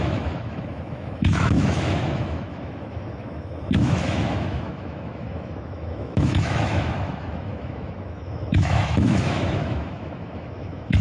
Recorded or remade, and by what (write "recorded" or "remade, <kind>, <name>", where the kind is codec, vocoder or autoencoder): remade, autoencoder, DAC-VAE